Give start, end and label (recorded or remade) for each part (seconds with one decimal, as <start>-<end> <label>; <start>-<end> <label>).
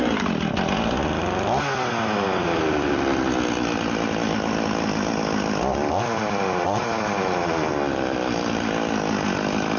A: 0.0-9.8 recorded